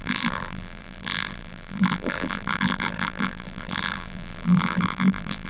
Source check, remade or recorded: remade